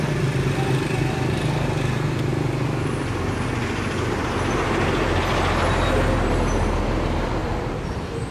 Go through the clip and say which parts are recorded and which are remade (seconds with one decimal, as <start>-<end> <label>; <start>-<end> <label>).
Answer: 0.0-7.4 recorded; 7.4-8.3 remade

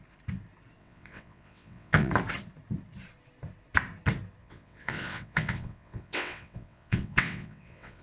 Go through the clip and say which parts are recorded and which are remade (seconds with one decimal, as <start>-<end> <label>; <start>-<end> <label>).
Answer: 0.0-0.8 recorded; 0.8-2.1 remade; 2.1-4.4 recorded; 4.4-8.0 remade

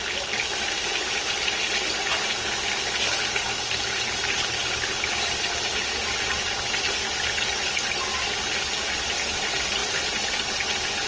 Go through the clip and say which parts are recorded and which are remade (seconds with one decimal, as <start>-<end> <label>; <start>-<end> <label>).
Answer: 0.0-9.8 recorded; 9.8-10.5 remade; 10.5-11.1 recorded

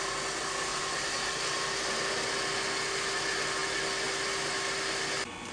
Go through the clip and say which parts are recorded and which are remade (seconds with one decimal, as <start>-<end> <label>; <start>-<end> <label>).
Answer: 0.0-0.7 recorded; 0.7-1.3 remade; 1.3-5.5 recorded

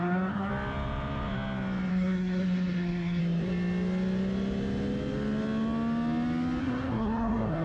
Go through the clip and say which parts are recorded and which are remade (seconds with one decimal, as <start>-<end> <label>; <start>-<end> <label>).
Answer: 0.0-0.5 remade; 0.5-1.9 recorded; 1.9-3.2 remade; 3.2-6.6 recorded; 6.6-7.6 remade

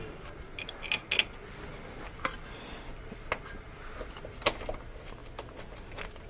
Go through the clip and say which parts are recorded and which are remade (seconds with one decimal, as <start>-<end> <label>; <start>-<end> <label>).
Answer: 0.0-6.3 recorded

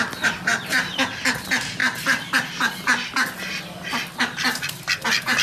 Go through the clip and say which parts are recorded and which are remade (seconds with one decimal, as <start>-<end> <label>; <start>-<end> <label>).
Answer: 0.0-5.4 recorded